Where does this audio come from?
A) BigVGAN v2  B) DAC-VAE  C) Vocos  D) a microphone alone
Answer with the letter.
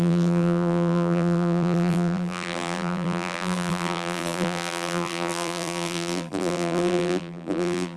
A